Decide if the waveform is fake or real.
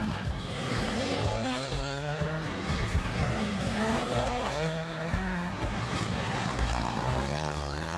fake